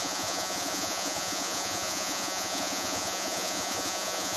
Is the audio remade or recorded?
remade